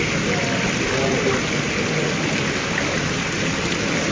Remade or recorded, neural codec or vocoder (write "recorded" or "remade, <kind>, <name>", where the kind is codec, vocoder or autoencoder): recorded